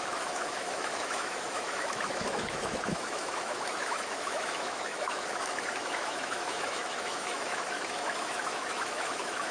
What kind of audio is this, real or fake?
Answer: fake